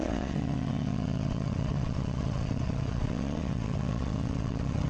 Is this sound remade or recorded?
remade